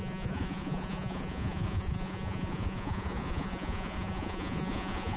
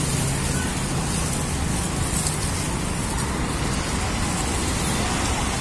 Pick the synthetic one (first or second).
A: first